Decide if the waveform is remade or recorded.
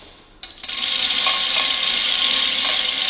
recorded